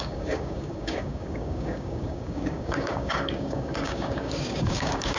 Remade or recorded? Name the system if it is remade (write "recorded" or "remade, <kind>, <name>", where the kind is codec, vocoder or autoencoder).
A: remade, codec, DAC